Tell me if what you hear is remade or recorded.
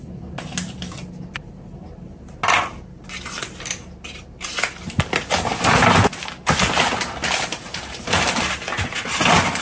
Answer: recorded